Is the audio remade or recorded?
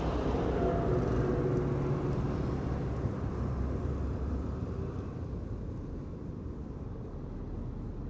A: recorded